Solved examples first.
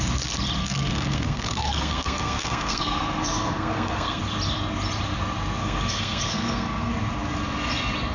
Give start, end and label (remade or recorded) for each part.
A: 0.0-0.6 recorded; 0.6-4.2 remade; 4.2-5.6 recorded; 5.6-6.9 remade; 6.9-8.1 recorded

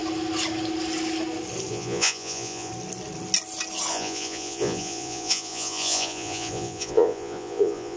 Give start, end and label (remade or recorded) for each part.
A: 0.0-1.7 recorded; 1.7-2.7 remade; 2.7-3.9 recorded; 3.9-8.0 remade

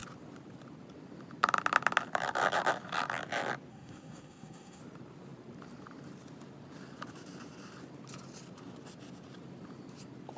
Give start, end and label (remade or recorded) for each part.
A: 0.0-3.7 recorded; 3.7-4.8 remade; 4.8-10.4 recorded